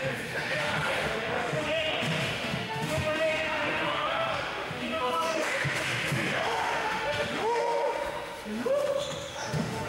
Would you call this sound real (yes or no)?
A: no